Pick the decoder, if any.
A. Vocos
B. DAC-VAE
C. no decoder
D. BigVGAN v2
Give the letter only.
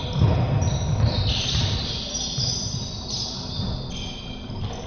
C